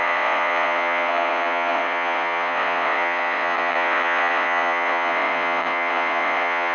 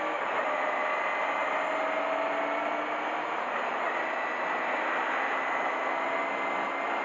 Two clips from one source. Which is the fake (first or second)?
first